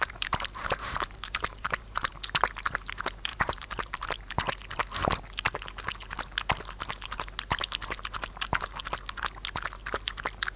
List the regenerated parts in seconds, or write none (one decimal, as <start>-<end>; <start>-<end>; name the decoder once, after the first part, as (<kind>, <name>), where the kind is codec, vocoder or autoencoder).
0.0-2.1 (vocoder, BigVGAN v2); 3.3-4.3